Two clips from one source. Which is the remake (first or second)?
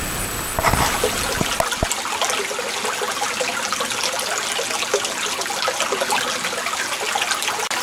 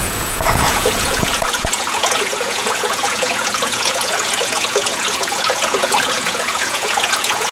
second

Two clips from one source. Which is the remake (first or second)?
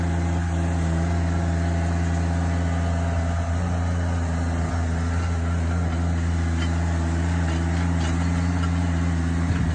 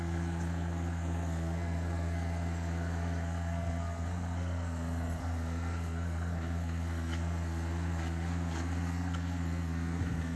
second